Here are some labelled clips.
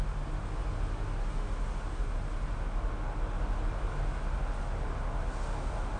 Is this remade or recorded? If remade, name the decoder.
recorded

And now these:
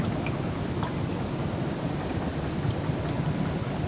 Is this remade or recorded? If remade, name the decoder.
recorded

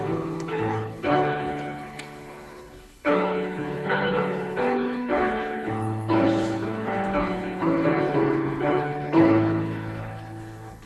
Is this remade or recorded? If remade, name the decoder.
remade, codec, HILCodec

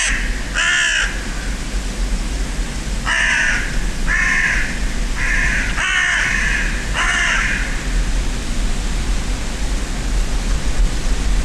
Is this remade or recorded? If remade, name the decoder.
recorded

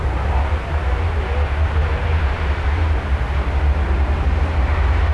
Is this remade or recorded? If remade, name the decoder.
recorded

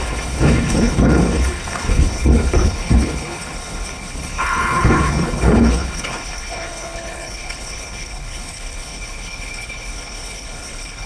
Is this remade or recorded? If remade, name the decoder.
remade, codec, HILCodec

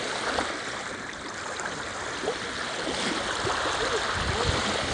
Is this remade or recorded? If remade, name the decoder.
recorded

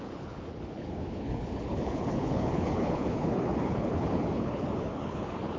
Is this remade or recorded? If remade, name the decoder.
remade, codec, HILCodec